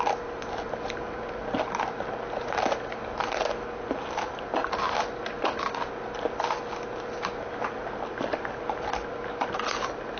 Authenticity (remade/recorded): recorded